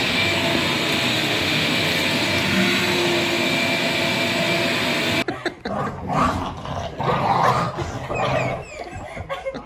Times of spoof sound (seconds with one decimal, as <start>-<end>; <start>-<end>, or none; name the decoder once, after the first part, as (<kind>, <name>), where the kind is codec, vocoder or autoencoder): 1.1-1.7 (autoencoder, DAC-VAE)